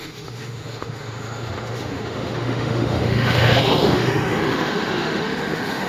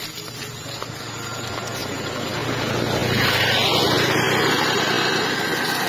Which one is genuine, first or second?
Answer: second